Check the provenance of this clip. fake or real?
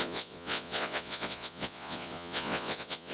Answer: fake